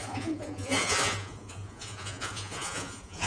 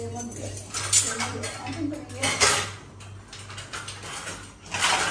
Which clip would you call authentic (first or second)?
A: second